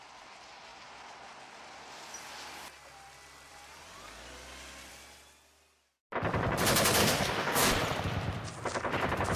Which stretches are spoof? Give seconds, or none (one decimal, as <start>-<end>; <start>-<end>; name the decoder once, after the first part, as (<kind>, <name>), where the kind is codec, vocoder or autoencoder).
7.0-7.7 (codec, DAC)